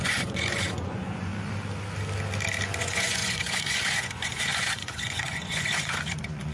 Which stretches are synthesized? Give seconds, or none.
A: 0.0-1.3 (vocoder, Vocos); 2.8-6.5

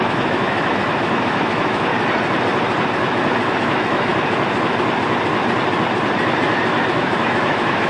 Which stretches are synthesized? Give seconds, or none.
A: 0.0-1.9 (autoencoder, DAC-VAE); 3.5-4.1; 6.9-7.9

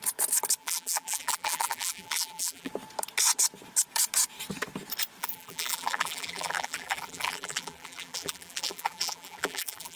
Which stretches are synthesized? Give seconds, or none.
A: 0.6-2.7 (vocoder, BigVGAN v2); 5.2-10.0

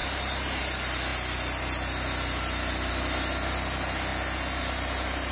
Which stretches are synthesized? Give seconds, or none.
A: 0.0-0.6 (vocoder, BigVGAN v2)

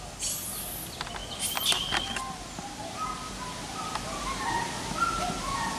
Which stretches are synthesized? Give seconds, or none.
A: none